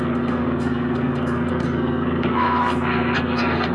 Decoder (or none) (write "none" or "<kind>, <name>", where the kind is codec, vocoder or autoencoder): codec, SNAC